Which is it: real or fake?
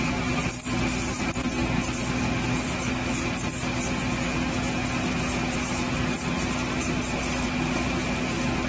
real